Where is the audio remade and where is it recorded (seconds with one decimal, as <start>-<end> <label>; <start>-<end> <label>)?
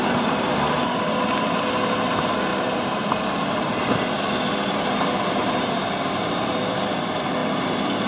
0.0-2.5 recorded; 2.5-3.1 remade; 3.1-5.4 recorded; 5.4-6.8 remade; 6.8-8.1 recorded